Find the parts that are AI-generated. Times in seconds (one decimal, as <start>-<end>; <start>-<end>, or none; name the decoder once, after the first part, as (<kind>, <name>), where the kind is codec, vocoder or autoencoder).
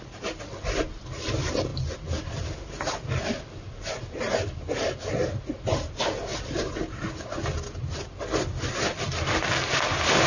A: 6.3-7.1 (vocoder, BigVGAN v2)